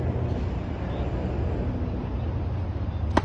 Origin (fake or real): real